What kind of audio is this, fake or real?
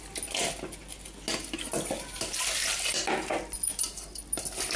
real